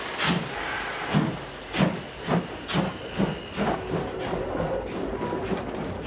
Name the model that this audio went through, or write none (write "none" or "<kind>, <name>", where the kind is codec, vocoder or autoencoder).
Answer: none